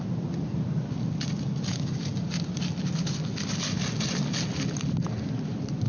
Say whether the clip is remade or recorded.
recorded